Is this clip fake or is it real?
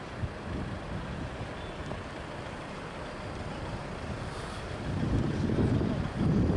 real